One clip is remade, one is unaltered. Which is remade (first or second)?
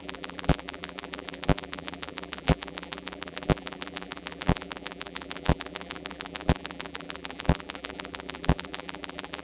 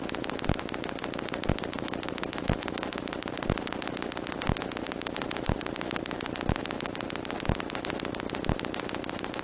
first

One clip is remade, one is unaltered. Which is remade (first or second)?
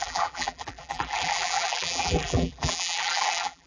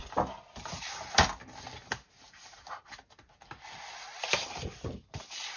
first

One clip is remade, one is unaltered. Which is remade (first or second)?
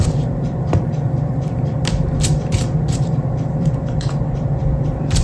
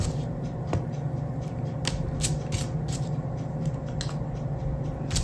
first